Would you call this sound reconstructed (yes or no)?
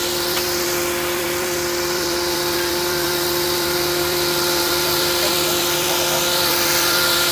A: yes